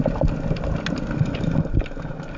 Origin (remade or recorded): recorded